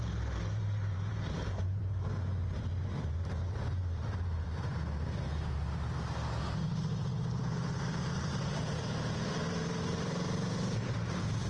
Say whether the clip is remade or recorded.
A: remade